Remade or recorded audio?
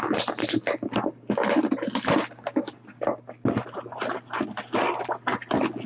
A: recorded